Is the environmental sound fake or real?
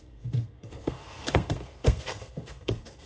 fake